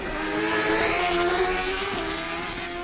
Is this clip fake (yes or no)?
yes